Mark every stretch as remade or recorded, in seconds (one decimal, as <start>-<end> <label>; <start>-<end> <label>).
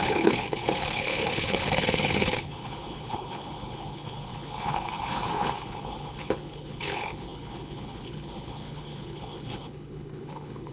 0.0-10.7 remade